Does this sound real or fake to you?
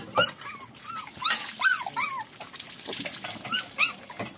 real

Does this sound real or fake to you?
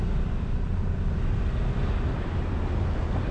real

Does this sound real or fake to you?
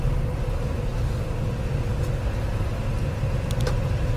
real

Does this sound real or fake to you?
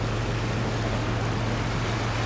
real